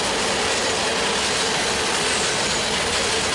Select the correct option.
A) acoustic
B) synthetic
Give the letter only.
A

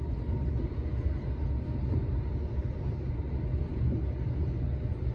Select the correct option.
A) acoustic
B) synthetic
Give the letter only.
A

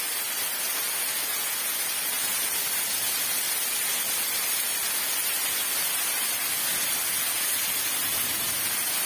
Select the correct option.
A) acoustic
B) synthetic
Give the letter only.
A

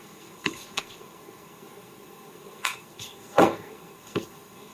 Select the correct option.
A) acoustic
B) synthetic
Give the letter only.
B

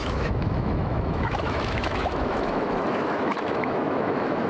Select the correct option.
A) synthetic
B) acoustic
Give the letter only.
A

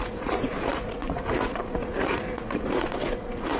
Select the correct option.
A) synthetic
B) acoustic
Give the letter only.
A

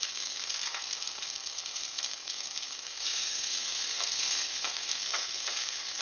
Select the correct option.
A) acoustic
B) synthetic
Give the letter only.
B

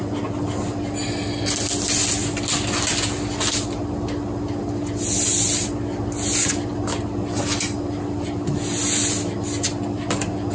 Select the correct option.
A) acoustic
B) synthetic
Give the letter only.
A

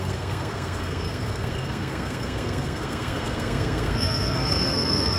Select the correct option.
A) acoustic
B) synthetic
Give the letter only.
B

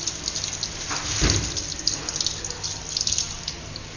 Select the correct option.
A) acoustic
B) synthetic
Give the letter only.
A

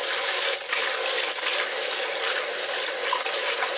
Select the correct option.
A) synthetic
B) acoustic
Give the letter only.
B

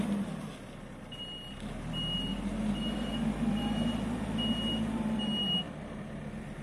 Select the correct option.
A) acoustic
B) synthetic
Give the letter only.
A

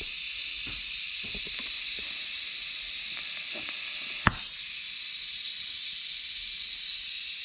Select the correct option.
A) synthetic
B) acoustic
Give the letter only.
B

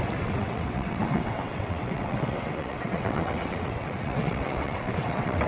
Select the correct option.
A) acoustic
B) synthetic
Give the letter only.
B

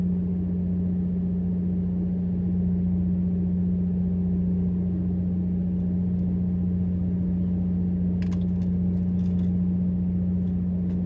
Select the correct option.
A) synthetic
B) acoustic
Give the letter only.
B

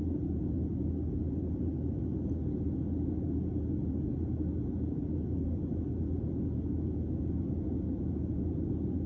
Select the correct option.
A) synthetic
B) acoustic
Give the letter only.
B